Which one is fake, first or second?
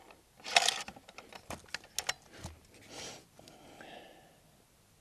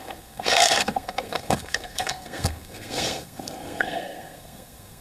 second